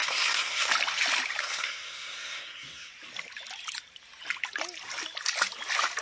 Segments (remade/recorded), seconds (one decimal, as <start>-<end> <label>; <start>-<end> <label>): 0.0-0.7 remade; 0.7-1.4 recorded; 1.4-2.9 remade; 2.9-6.0 recorded